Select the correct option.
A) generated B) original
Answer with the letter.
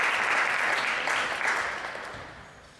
B